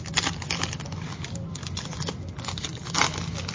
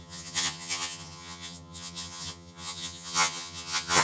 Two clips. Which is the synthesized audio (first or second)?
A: second